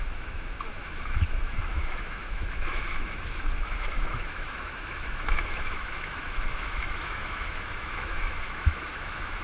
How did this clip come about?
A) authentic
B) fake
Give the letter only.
B